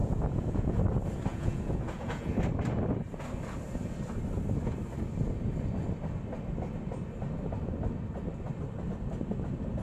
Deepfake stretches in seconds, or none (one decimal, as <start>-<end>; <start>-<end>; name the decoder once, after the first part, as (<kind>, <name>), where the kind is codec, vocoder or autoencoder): 0.0-0.8 (vocoder, Vocos); 1.3-2.4